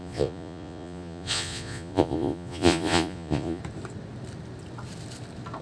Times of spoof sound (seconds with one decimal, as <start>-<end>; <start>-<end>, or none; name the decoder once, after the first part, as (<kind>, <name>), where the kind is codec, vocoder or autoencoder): 0.0-3.6 (vocoder, Vocos)